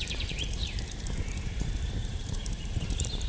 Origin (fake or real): fake